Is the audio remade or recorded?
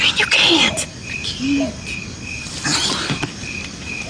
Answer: recorded